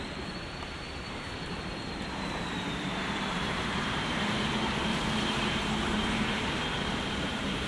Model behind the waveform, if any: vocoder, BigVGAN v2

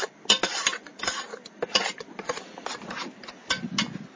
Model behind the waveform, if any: none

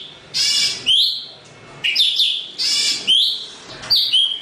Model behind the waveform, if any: none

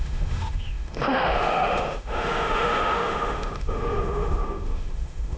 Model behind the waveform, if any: autoencoder, DAC-VAE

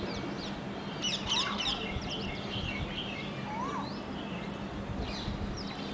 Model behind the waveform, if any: none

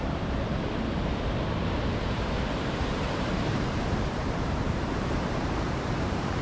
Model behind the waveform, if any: vocoder, BigVGAN v2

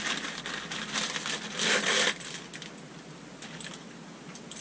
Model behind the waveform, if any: none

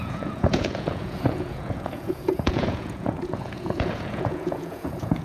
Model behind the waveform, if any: vocoder, Vocos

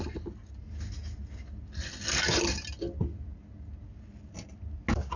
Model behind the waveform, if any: none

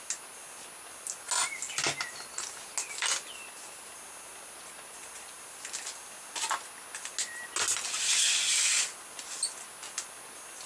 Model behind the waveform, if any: none